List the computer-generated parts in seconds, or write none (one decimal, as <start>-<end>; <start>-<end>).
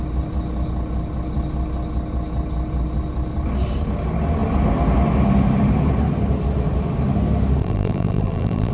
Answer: 7.6-8.7